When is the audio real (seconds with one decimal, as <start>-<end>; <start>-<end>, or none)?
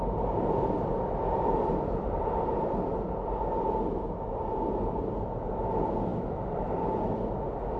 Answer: 0.0-7.8